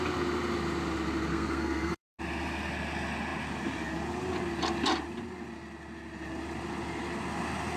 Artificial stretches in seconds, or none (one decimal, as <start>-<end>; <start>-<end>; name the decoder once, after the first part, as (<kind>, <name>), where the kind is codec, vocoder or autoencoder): 1.3-2.2 (codec, SNAC)